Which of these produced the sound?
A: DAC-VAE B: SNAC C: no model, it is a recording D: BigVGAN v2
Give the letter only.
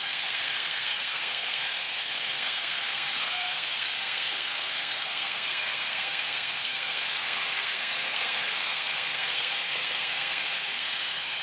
B